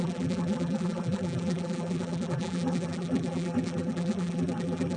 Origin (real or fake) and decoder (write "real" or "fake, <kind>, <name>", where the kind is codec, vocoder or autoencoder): fake, vocoder, BigVGAN v2